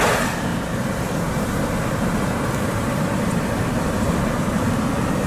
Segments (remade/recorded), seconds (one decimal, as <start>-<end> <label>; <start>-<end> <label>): 0.0-0.5 recorded; 0.5-3.7 remade; 3.7-5.3 recorded